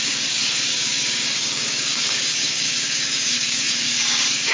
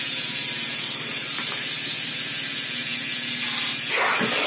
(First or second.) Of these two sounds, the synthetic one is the first